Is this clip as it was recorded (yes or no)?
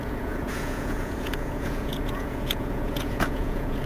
no